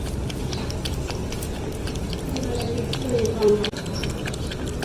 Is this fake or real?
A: fake